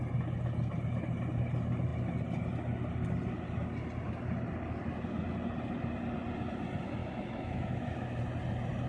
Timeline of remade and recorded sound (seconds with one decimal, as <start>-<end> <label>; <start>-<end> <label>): 0.0-7.0 recorded; 7.0-8.2 remade; 8.2-8.9 recorded